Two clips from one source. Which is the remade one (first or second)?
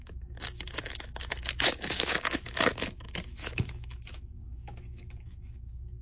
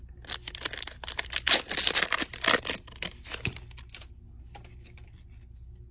first